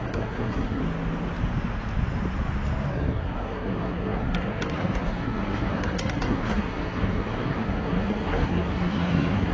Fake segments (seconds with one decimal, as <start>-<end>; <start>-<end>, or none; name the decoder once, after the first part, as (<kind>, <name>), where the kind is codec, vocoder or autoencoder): 0.0-0.8 (codec, SNAC); 2.9-9.5